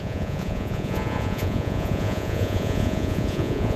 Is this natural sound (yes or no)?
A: no